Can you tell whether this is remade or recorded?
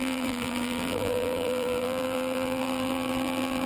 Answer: remade